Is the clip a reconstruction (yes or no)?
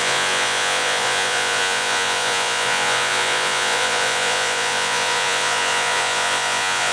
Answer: yes